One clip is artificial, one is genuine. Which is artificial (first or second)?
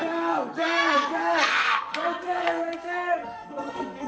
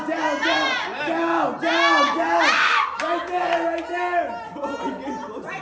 first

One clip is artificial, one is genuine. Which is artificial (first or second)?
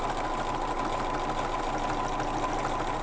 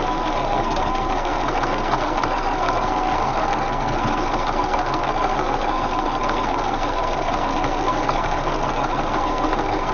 second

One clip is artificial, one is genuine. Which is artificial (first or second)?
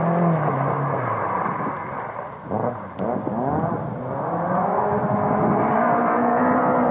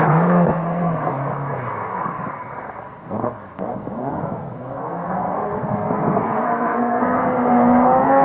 second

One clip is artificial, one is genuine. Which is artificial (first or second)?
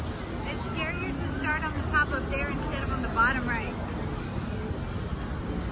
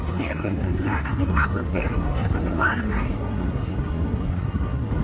second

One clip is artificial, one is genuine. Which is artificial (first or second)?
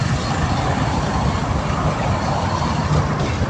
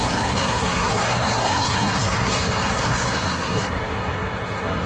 second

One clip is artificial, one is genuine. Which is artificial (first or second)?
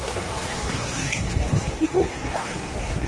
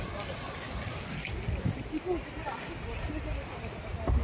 first